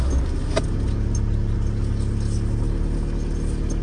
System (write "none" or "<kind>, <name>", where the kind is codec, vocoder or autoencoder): none